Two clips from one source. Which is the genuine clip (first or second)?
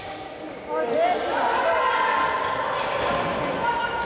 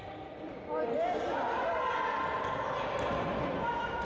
first